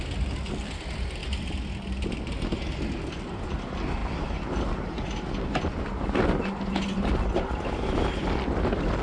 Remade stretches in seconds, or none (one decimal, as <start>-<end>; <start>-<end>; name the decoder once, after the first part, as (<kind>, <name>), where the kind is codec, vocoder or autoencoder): none